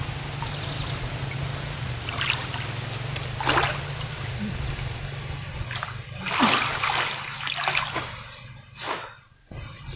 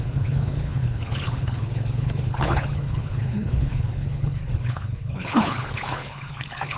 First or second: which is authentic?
first